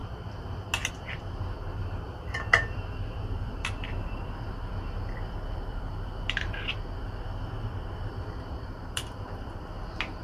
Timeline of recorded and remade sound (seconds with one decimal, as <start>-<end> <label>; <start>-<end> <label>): 0.0-0.9 recorded; 0.9-10.2 remade